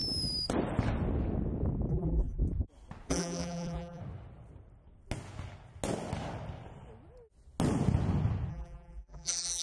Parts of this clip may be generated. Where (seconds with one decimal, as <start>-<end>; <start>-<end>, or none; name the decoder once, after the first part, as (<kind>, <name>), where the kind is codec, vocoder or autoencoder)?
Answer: 1.9-2.4 (vocoder, BigVGAN v2); 3.1-4.0; 8.5-9.6